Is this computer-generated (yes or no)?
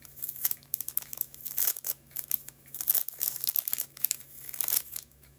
yes